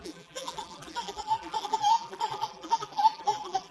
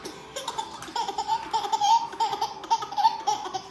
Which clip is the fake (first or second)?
first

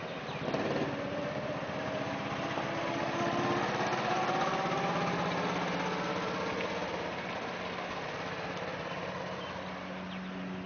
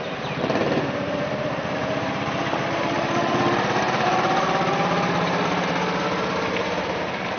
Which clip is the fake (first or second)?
second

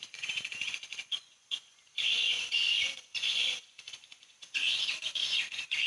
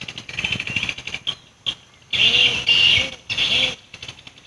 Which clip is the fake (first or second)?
first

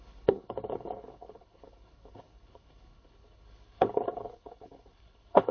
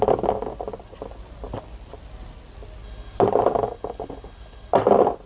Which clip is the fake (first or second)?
first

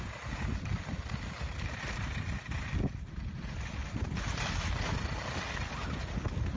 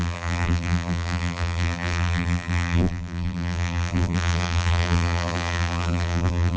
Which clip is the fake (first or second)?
second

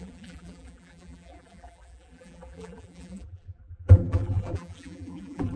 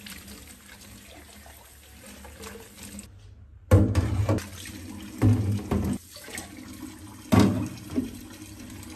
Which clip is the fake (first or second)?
first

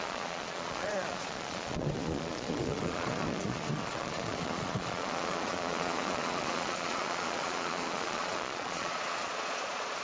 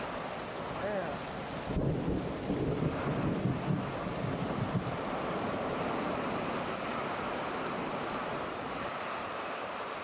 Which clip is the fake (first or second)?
first